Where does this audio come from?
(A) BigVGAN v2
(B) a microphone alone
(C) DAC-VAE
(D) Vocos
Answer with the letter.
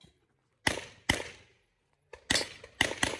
B